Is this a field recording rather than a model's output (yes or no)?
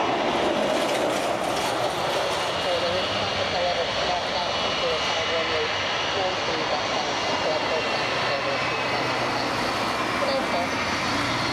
yes